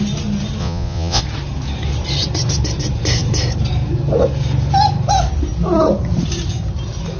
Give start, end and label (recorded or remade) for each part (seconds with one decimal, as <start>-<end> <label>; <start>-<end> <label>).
0.0-0.6 recorded; 0.6-1.2 remade; 1.2-7.2 recorded